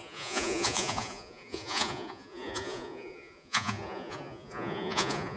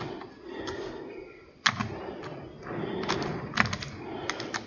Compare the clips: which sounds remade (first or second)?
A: first